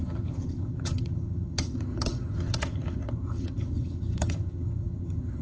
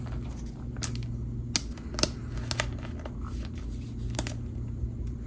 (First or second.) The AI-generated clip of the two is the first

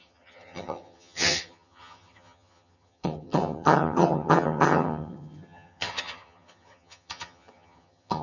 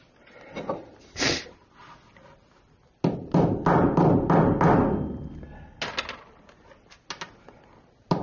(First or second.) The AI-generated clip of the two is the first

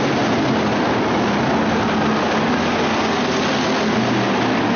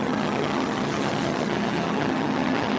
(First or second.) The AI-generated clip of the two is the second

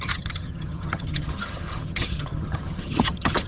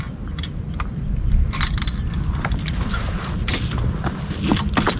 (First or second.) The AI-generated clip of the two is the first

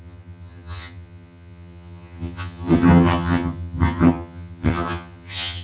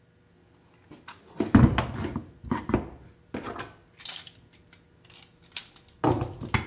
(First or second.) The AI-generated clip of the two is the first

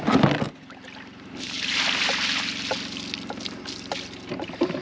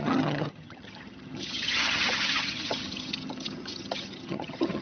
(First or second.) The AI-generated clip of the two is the second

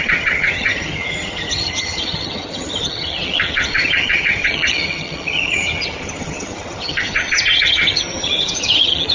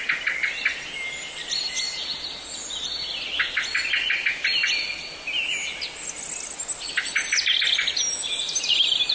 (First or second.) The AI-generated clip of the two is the first